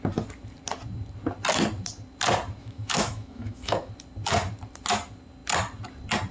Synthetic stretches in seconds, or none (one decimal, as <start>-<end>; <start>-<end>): 2.6-3.9